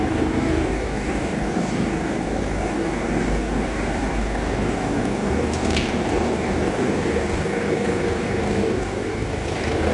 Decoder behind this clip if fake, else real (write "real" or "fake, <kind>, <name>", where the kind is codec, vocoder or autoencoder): fake, codec, DAC